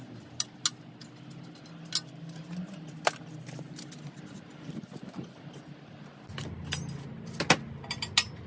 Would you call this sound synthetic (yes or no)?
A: no